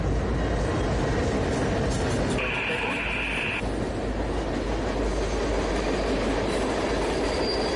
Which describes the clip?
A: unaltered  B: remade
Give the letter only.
A